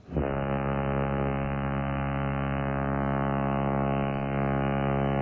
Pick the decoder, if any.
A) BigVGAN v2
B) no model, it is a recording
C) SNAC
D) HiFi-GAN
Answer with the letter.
B